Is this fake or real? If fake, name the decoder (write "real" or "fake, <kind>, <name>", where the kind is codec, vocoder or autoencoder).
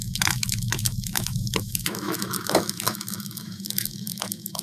fake, autoencoder, DAC-VAE